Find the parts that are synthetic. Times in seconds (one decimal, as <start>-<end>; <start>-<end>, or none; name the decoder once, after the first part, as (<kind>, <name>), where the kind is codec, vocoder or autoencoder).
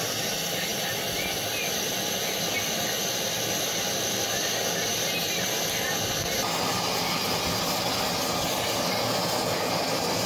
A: 0.7-2.1 (vocoder, BigVGAN v2)